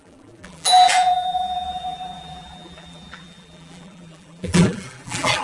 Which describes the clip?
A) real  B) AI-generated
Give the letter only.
B